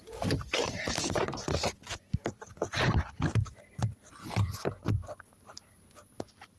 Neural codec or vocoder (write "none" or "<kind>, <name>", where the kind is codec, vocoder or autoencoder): none